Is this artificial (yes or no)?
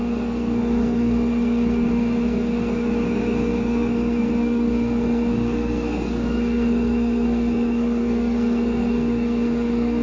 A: yes